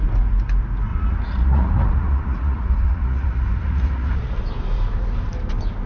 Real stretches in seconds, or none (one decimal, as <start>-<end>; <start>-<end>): 0.0-0.9; 4.4-5.9

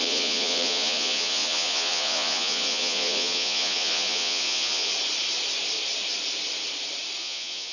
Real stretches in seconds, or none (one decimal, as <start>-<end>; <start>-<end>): 4.9-7.2

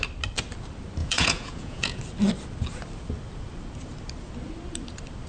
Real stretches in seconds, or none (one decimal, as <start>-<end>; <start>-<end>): 0.0-1.0; 2.0-5.3

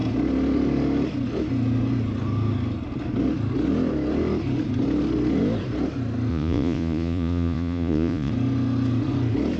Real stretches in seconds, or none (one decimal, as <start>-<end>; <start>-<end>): 0.0-6.3; 8.3-9.6

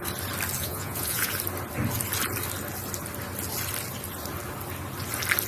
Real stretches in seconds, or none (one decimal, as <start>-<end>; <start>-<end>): 0.0-0.6; 1.3-5.5

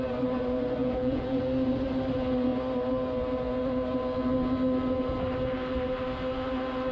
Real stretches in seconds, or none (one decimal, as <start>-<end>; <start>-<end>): 0.0-0.8; 1.4-6.9

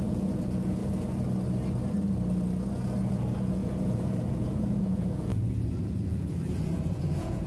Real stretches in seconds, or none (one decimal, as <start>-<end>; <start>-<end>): 0.8-3.0

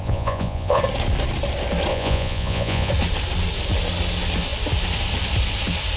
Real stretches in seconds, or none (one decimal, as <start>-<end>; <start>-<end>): 0.8-1.9; 2.9-6.0